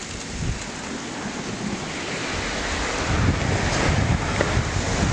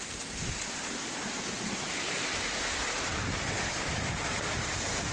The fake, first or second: second